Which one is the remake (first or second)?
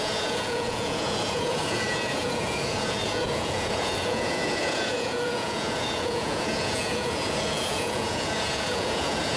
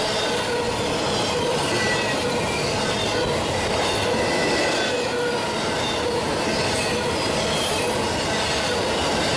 first